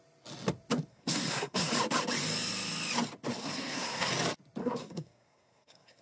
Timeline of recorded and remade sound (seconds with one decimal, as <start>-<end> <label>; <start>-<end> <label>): 0.0-0.9 recorded; 0.9-1.7 remade; 1.7-3.4 recorded; 3.4-4.1 remade; 4.1-4.6 recorded; 4.6-6.0 remade